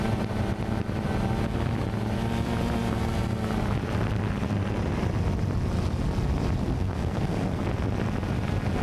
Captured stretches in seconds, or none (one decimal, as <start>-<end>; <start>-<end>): 0.0-6.6; 7.7-8.8